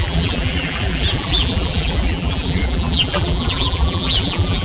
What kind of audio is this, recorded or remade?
remade